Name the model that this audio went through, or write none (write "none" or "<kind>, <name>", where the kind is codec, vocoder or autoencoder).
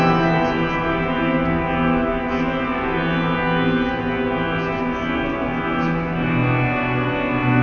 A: none